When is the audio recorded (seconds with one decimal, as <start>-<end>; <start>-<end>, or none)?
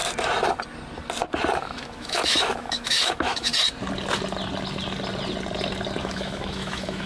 0.0-1.6; 3.5-6.0